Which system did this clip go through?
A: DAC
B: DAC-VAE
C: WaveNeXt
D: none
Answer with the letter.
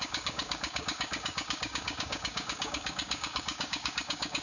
A